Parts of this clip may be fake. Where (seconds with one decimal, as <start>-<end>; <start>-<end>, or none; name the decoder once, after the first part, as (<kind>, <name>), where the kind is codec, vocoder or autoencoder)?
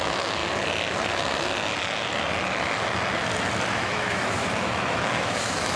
0.0-0.4 (autoencoder, DAC-VAE); 3.7-5.8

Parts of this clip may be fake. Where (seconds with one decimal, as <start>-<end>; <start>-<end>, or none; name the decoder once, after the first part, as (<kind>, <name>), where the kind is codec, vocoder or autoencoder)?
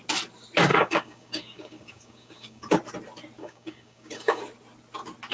0.7-2.7 (codec, DAC); 3.4-4.4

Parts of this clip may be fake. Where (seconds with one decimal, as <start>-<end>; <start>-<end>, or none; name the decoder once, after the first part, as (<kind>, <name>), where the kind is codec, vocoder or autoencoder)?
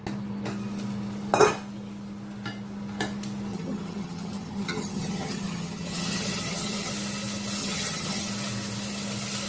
3.5-6.9 (vocoder, HiFi-GAN); 7.6-8.3